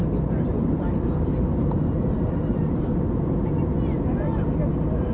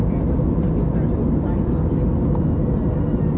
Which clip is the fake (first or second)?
first